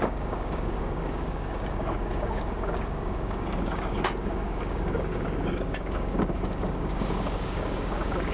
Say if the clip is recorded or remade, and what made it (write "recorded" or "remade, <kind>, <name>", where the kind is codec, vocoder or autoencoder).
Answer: remade, codec, DAC